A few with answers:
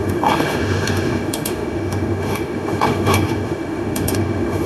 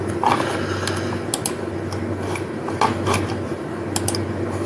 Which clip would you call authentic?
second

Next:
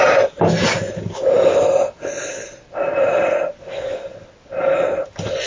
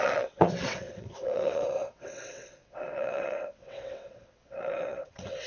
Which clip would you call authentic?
first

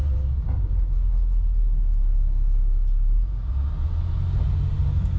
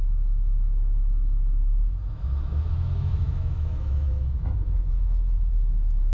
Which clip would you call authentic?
first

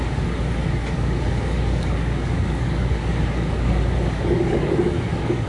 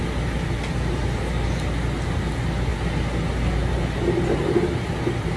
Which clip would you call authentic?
second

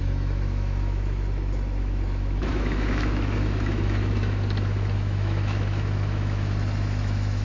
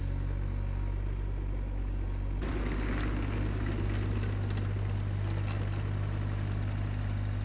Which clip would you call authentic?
second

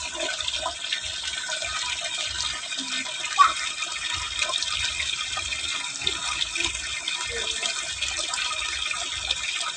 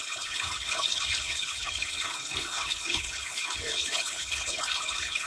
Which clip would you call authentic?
first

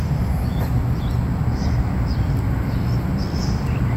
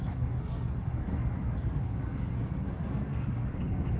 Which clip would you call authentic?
first